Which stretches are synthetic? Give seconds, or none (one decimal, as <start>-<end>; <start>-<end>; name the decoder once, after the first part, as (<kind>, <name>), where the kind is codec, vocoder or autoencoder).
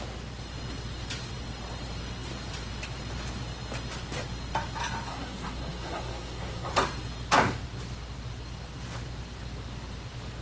5.1-6.7 (codec, SNAC)